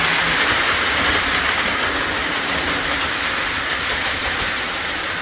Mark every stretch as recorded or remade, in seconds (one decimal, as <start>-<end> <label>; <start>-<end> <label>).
0.0-2.2 recorded; 2.2-3.0 remade; 3.0-4.2 recorded; 4.2-4.8 remade; 4.8-5.2 recorded